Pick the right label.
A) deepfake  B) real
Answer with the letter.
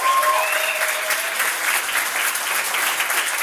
B